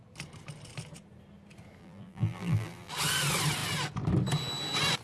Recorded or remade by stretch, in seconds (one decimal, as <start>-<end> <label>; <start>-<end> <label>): 0.0-1.8 recorded; 1.8-2.9 remade; 2.9-5.0 recorded